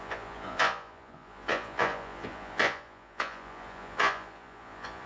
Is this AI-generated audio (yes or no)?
yes